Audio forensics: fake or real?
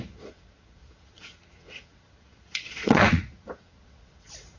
fake